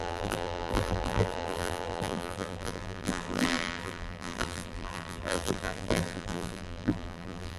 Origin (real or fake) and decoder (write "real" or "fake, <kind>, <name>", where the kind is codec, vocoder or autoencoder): fake, vocoder, BigVGAN v2